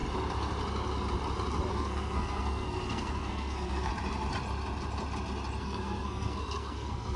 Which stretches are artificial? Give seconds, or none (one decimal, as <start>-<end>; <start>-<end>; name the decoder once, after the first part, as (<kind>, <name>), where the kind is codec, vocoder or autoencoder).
1.7-3.9 (codec, SNAC); 5.6-7.2

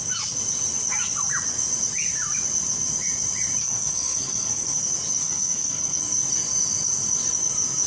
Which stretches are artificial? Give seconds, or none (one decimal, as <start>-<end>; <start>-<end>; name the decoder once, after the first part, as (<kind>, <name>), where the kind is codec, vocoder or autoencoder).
3.6-4.8 (codec, SNAC); 5.2-6.0

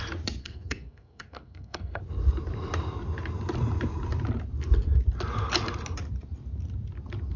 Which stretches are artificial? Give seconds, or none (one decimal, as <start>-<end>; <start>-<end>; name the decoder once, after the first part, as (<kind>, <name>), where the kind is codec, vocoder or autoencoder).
0.4-2.0 (codec, SNAC)

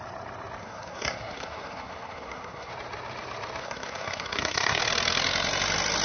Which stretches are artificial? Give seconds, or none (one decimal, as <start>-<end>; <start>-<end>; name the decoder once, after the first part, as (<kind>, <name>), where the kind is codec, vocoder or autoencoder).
0.6-2.7 (codec, SNAC); 3.6-4.8

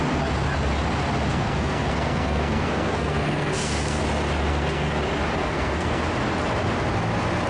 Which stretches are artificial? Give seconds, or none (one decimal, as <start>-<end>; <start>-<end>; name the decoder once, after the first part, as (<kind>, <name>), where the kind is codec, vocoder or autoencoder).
1.3-4.0 (codec, SNAC); 4.5-5.0; 5.4-6.0